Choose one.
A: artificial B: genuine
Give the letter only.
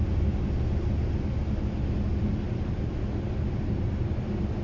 B